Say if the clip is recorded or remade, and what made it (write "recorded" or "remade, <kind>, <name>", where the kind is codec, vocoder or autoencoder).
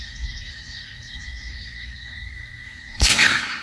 remade, codec, SNAC